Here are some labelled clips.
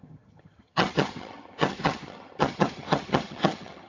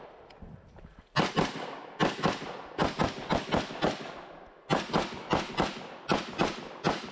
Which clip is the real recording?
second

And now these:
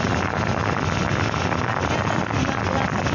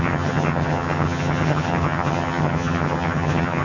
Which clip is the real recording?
first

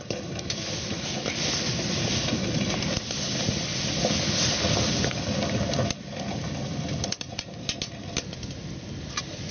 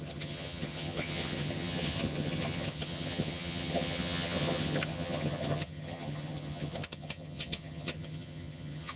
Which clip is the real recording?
first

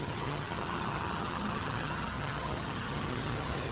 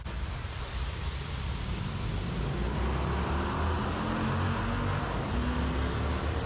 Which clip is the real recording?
second